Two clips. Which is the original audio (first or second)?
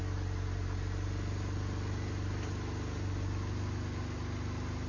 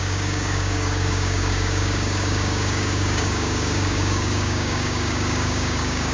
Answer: first